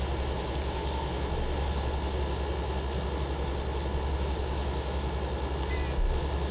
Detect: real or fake real